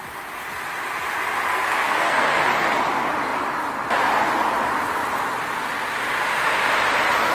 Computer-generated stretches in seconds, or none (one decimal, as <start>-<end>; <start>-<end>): 1.5-2.3